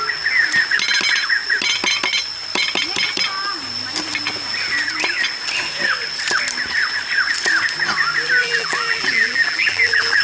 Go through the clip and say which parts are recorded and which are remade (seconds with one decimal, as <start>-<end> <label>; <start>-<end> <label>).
0.0-8.4 recorded; 8.4-10.2 remade